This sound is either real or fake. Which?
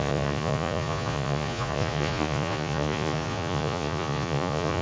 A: fake